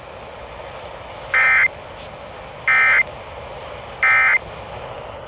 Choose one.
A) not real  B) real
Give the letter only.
B